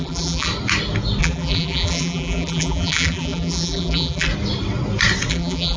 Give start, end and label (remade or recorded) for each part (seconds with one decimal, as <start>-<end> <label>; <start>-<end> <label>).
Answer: 0.0-0.5 remade; 0.5-1.2 recorded; 1.2-4.3 remade; 4.3-5.3 recorded; 5.3-5.8 remade